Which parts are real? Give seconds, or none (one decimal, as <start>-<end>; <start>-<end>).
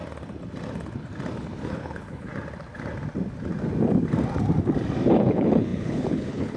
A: 0.0-1.4; 2.3-5.1